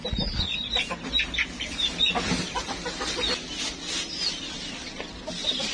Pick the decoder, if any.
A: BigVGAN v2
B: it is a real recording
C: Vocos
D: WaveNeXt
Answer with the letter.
B